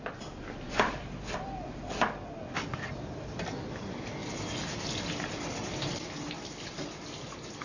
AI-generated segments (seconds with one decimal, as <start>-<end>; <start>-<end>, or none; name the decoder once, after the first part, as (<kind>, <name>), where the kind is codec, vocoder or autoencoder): none